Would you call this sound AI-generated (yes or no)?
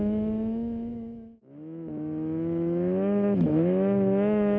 yes